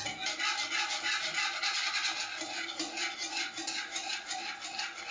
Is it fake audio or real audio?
real